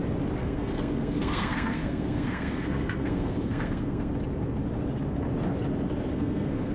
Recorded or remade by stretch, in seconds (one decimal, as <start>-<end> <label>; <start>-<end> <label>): 0.0-0.4 recorded; 0.4-4.1 remade; 4.1-6.1 recorded; 6.1-6.7 remade